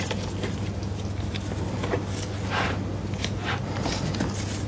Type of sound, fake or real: real